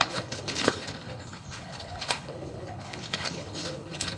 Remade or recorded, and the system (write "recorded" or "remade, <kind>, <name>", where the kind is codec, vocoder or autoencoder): remade, codec, HILCodec